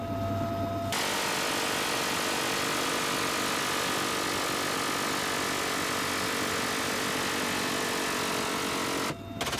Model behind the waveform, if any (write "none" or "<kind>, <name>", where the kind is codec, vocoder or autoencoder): none